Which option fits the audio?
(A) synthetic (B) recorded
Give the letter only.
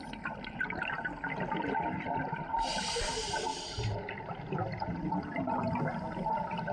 B